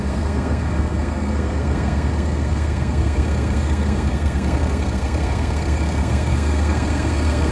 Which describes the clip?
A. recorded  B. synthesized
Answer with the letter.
B